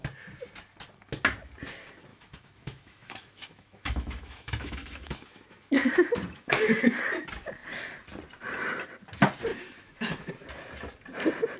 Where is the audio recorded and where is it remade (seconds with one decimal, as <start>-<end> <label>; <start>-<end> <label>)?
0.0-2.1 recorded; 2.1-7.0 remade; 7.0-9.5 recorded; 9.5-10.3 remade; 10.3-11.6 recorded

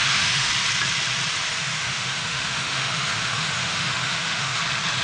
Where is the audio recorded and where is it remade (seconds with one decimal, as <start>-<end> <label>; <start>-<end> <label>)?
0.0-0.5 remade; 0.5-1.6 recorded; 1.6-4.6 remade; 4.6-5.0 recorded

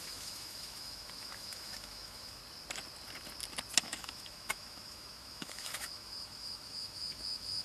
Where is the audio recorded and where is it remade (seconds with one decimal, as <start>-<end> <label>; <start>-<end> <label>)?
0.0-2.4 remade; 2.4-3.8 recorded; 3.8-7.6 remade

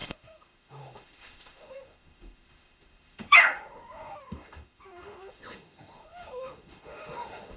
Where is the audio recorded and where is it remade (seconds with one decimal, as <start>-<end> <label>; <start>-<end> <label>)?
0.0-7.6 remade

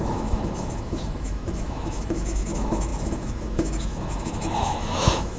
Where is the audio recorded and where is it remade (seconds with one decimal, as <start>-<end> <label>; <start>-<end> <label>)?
0.0-5.4 remade

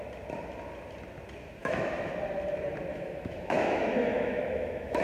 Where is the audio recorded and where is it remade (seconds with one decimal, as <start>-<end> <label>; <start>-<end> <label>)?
0.0-1.6 recorded; 1.6-2.1 remade; 2.1-2.9 recorded; 2.9-5.0 remade

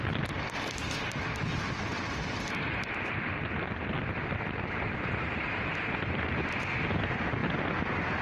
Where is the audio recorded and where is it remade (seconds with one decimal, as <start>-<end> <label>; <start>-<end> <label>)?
0.0-8.2 recorded

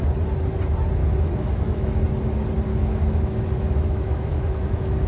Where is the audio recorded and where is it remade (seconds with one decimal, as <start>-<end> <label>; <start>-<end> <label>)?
0.0-1.0 recorded; 1.0-2.0 remade; 2.0-2.7 recorded; 2.7-5.1 remade